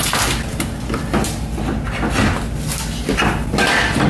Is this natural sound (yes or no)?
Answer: yes